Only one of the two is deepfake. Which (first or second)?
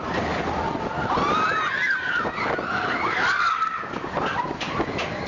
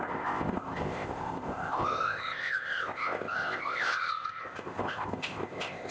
second